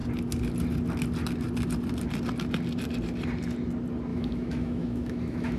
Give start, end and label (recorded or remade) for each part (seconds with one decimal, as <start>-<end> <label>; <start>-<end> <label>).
0.0-4.1 recorded; 4.1-5.6 remade